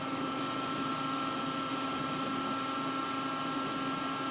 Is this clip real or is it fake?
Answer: real